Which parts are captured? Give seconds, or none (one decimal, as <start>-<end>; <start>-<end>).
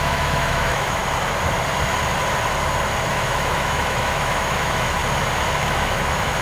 1.0-3.1; 5.0-5.6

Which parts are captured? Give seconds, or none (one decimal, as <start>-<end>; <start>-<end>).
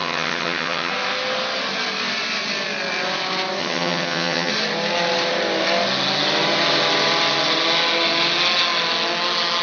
0.9-3.6; 4.5-9.6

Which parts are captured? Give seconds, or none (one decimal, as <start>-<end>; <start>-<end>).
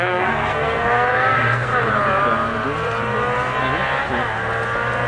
1.7-5.1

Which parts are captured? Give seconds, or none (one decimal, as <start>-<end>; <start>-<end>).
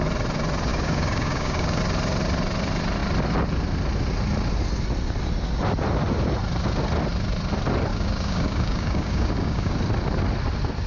0.0-0.7; 1.8-7.9; 9.7-10.9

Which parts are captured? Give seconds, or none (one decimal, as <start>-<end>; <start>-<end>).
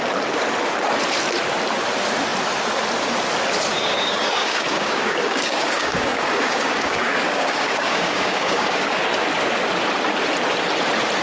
0.0-3.7; 9.0-11.2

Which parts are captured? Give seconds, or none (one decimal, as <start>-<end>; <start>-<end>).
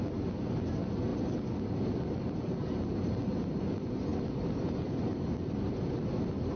0.0-4.1; 5.8-6.6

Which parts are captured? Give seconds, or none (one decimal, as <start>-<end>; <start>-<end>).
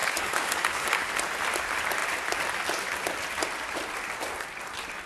1.1-5.1